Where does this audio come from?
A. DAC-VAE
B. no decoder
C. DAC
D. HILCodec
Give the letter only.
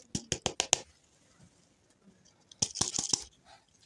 B